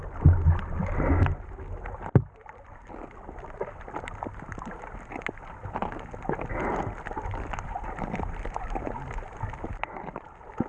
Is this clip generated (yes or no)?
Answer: no